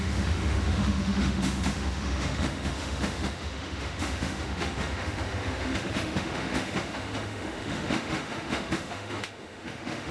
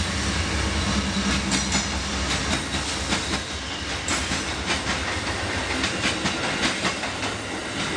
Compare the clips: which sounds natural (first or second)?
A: second